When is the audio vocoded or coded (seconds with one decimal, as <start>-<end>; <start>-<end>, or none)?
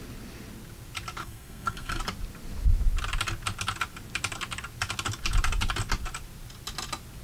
1.2-2.0